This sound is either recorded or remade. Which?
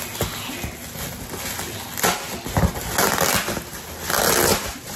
recorded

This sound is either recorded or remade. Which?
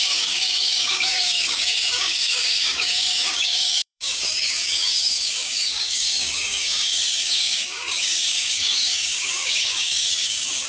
remade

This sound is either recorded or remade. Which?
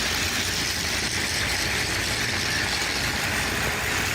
recorded